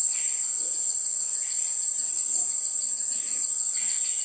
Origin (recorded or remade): recorded